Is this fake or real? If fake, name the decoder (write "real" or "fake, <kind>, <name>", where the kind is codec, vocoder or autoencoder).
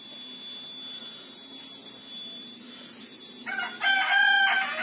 real